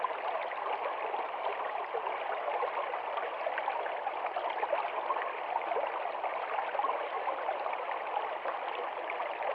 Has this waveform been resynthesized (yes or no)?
no